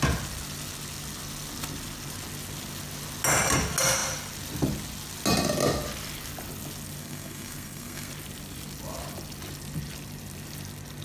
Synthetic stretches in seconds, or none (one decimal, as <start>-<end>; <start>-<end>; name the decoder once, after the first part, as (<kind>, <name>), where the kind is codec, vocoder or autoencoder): 7.0-8.1 (codec, SNAC)